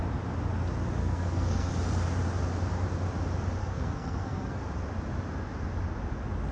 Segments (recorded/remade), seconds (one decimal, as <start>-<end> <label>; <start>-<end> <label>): 0.0-1.0 recorded; 1.0-1.7 remade; 1.7-3.6 recorded; 3.6-4.6 remade; 4.6-6.5 recorded